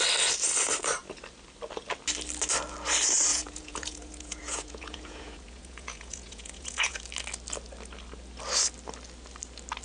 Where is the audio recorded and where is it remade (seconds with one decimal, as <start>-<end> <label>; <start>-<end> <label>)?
0.0-3.3 recorded; 3.3-7.0 remade; 7.0-9.8 recorded